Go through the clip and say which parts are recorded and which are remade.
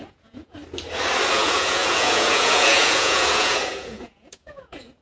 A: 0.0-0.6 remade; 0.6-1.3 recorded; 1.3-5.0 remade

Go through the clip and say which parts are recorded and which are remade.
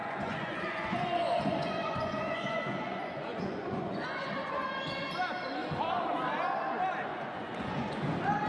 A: 0.0-4.3 remade; 4.3-7.1 recorded; 7.1-8.0 remade; 8.0-8.5 recorded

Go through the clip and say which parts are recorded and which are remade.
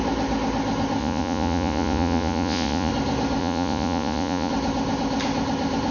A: 0.0-1.0 recorded; 1.0-2.9 remade; 2.9-3.4 recorded; 3.4-4.5 remade; 4.5-5.9 recorded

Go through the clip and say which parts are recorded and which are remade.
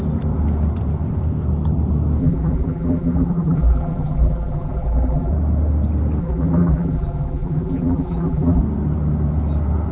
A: 0.0-2.2 recorded; 2.2-5.3 remade; 5.3-6.2 recorded; 6.2-8.6 remade; 8.6-9.9 recorded